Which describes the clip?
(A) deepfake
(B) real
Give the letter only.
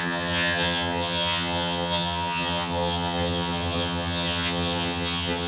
A